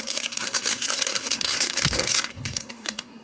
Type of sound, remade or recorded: remade